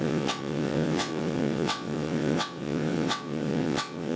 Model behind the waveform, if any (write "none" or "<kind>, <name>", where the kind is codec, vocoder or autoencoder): vocoder, WaveNeXt